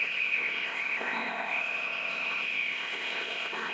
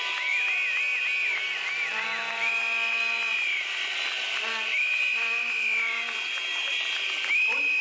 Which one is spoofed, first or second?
first